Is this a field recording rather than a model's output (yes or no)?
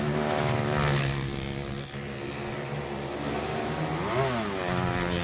yes